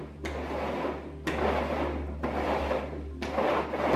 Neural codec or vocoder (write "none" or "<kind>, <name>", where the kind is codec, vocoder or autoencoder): none